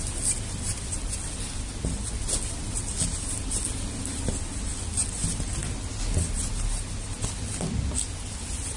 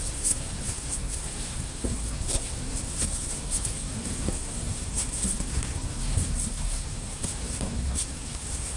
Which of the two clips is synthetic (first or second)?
second